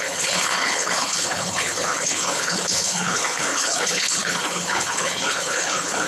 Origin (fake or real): fake